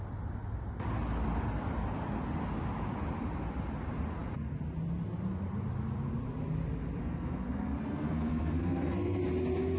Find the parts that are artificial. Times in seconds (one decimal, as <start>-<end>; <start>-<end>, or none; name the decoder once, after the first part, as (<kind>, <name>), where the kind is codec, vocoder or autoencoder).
7.0-9.2 (codec, SNAC)